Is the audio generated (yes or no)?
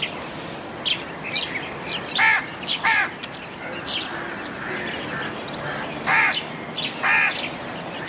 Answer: no